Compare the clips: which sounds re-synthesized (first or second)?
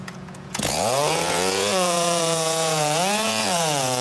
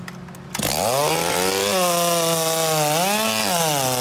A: first